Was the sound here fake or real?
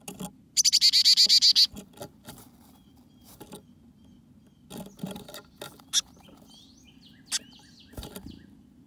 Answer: real